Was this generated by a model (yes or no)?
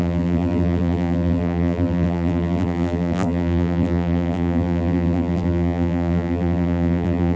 yes